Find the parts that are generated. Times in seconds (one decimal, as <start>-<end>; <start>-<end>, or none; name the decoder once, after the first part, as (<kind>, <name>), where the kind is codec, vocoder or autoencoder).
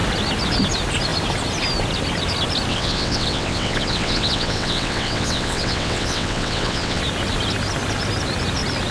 2.7-7.0 (vocoder, WaveNeXt)